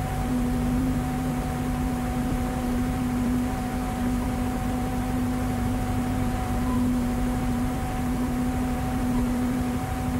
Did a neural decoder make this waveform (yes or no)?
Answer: yes